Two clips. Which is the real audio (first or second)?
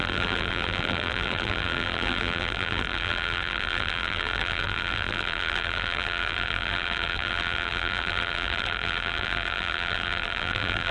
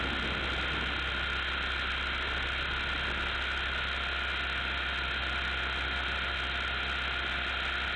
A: second